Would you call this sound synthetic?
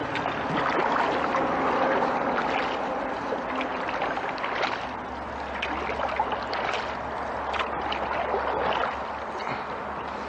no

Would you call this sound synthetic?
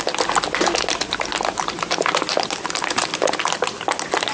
no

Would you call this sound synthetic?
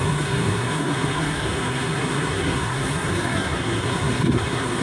yes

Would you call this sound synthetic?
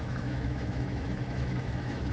yes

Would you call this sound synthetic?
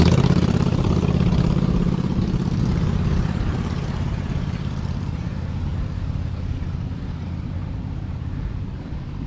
yes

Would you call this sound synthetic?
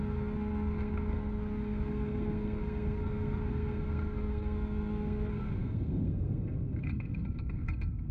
yes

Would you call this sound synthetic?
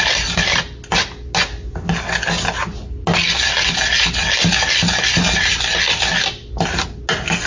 no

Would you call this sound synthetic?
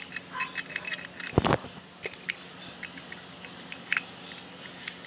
no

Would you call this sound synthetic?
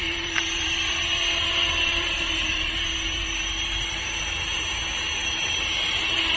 yes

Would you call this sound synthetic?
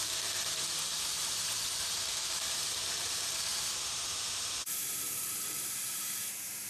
yes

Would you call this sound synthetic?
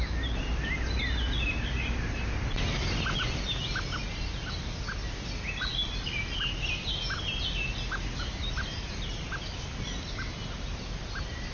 no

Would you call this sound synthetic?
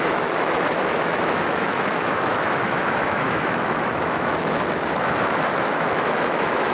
yes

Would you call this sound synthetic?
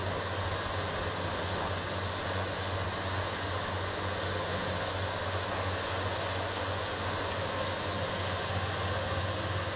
yes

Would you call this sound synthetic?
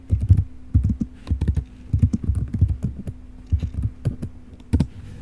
no